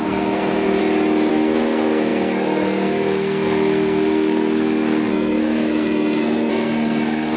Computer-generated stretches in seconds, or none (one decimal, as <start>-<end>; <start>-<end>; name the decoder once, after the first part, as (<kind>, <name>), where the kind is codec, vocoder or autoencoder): 0.0-0.8 (codec, SNAC); 1.3-7.4